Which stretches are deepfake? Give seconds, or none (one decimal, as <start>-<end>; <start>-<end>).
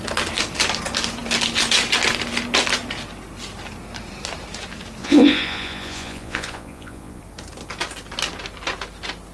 5.0-7.2